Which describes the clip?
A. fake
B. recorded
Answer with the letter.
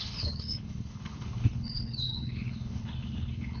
A